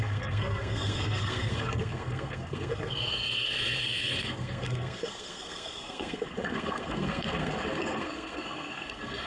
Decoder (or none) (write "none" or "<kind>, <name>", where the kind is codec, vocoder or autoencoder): codec, SNAC